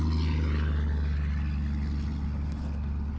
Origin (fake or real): real